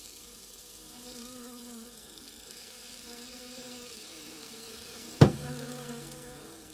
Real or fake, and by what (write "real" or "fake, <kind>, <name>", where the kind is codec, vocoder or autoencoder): fake, codec, SNAC